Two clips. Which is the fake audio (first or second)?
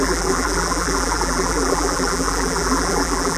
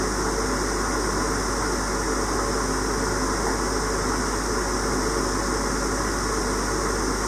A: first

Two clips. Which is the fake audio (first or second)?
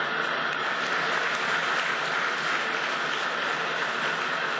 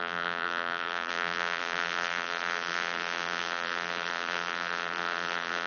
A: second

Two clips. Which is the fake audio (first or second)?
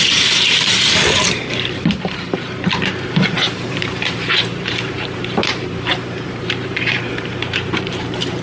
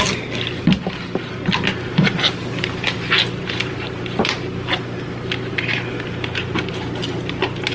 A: first